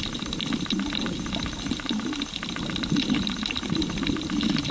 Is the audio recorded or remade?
recorded